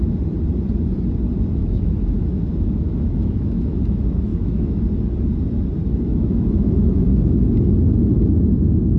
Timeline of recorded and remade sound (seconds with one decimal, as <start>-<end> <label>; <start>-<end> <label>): 0.0-1.6 recorded; 1.6-3.8 remade; 3.8-4.3 recorded; 4.3-4.8 remade; 4.8-6.1 recorded; 6.1-7.3 remade; 7.3-9.0 recorded